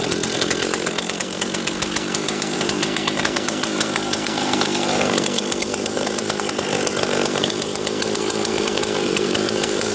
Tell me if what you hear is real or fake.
fake